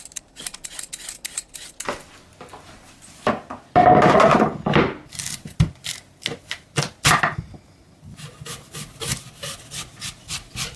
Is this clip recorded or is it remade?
recorded